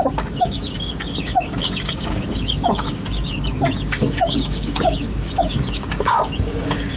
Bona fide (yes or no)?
no